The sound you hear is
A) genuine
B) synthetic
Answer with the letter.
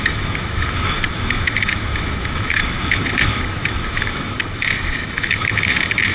B